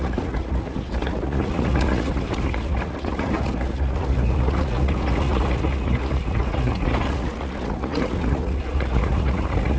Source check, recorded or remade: remade